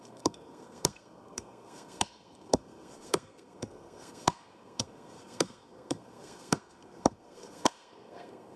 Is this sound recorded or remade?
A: remade